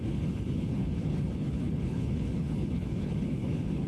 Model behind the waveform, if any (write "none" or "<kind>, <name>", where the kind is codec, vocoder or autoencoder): codec, HILCodec